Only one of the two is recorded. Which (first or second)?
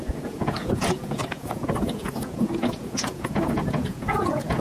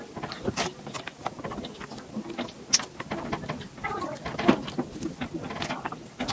second